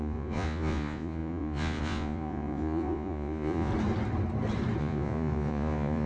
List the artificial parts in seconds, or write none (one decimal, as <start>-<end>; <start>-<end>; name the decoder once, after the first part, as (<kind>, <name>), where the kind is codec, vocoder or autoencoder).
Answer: 0.0-3.7 (vocoder, Vocos); 4.8-6.1